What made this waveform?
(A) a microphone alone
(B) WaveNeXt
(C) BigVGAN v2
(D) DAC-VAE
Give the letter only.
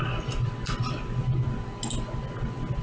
A